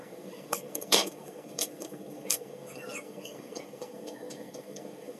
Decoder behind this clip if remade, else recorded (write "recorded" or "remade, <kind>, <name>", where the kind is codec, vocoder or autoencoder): remade, codec, SNAC